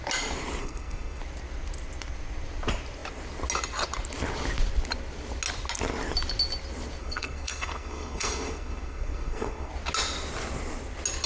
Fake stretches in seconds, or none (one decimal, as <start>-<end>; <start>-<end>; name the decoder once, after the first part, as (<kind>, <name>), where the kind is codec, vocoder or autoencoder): 0.6-1.2 (codec, SNAC); 7.0-9.7